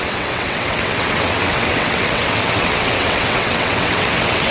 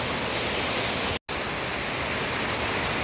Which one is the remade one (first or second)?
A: first